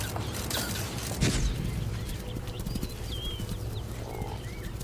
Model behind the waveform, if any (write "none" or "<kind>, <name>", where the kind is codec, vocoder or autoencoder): none